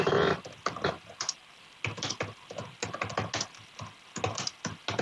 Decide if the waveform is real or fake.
real